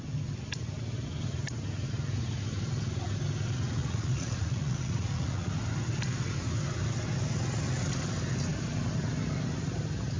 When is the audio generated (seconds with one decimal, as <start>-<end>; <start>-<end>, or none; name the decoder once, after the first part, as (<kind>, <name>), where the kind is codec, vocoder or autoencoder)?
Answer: 3.8-5.5 (vocoder, Vocos)